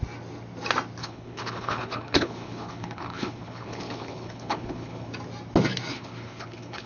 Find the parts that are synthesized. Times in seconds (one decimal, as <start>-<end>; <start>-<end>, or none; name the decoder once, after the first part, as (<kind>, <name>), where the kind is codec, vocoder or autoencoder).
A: 1.0-5.1 (codec, HILCodec); 5.9-6.9

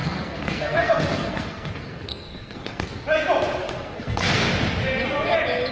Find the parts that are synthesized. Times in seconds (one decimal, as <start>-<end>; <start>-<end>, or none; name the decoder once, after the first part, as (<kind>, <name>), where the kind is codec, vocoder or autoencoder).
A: 0.0-3.0 (codec, SNAC); 3.6-4.5

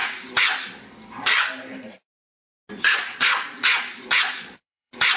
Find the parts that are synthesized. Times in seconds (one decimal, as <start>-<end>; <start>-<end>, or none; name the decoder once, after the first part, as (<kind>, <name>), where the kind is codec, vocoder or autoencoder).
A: 2.8-5.2 (vocoder, Vocos)

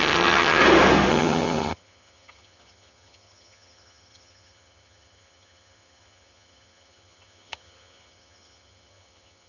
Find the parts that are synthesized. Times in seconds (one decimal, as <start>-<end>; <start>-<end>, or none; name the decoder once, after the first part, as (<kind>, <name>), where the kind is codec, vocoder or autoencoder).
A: 0.0-0.6 (vocoder, HiFi-GAN); 1.1-9.5